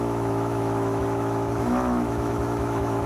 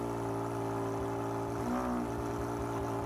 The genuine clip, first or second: second